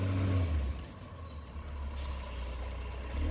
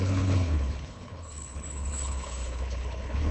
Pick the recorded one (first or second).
first